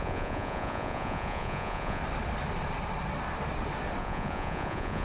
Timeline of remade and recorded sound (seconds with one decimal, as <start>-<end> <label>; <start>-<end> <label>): 0.0-2.0 remade; 2.0-4.0 recorded; 4.0-5.0 remade